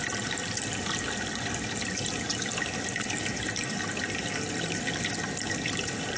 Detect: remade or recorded recorded